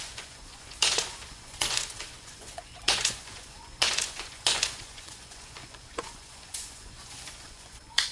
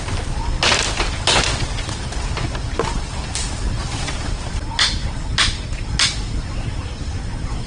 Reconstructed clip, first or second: first